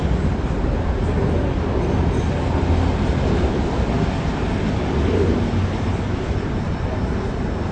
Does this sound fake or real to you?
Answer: real